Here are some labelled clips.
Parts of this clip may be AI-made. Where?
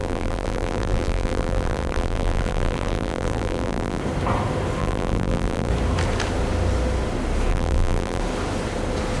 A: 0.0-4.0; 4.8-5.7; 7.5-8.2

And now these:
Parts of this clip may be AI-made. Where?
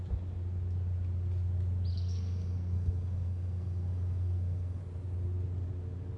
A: 1.9-4.8